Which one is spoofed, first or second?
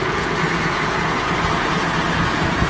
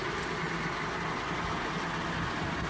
first